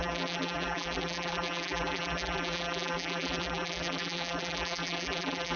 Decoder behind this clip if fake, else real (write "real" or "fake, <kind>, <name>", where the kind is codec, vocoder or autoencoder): fake, vocoder, BigVGAN v2